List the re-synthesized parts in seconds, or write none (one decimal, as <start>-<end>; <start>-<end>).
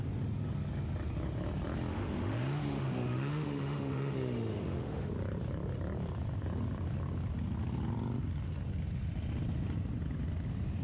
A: 1.9-5.1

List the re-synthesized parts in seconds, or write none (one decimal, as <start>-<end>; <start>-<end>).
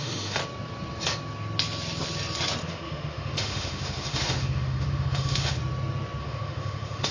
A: 0.0-0.4; 2.6-5.6; 6.2-7.1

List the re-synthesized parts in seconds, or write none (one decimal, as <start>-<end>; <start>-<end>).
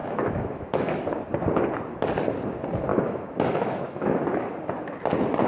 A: 0.0-1.0; 2.9-4.2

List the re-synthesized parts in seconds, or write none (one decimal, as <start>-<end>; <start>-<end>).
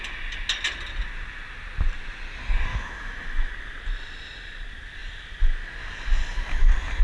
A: 2.7-3.5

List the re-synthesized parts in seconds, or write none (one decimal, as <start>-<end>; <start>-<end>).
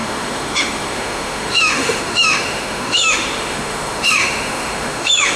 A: 0.0-5.4